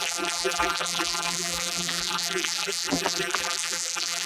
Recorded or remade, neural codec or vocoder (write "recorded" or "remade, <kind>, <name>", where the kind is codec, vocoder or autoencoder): remade, vocoder, BigVGAN v2